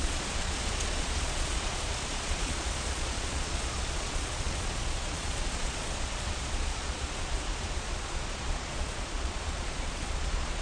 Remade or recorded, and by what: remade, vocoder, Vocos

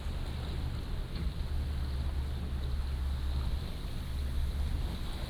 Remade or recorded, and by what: recorded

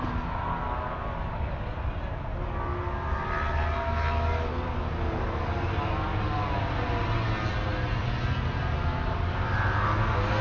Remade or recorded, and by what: recorded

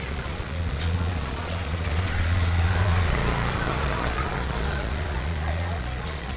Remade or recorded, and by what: remade, vocoder, Vocos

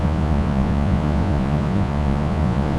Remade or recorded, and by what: remade, vocoder, Vocos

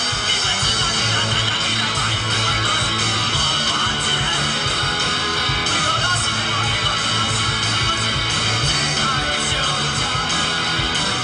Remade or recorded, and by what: recorded